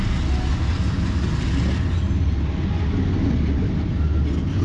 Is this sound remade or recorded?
recorded